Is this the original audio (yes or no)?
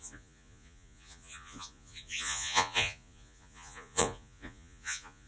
no